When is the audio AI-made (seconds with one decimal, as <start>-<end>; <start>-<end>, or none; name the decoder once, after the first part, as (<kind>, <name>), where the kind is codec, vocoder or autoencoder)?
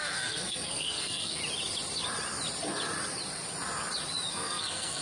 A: 0.0-1.4 (codec, SNAC); 4.3-5.0